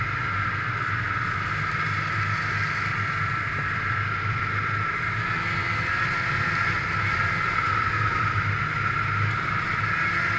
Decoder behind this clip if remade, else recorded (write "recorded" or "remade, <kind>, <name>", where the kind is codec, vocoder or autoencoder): recorded